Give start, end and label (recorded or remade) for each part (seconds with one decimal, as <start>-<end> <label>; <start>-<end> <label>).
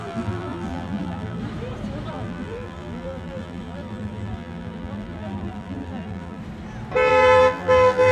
0.0-1.4 remade; 1.4-2.1 recorded; 2.1-6.4 remade; 6.4-7.1 recorded; 7.1-8.1 remade